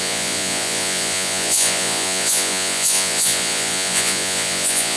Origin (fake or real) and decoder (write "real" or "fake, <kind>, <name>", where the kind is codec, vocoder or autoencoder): fake, vocoder, Vocos